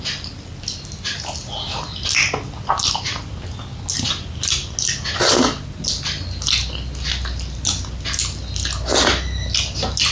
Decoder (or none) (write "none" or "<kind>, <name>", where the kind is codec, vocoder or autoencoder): none